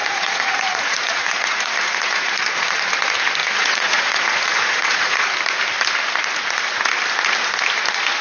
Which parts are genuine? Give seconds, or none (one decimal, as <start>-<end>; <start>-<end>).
2.8-3.4; 5.3-8.2